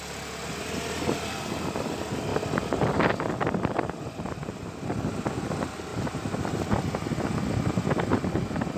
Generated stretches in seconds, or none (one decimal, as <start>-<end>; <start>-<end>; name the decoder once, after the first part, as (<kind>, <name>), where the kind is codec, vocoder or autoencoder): none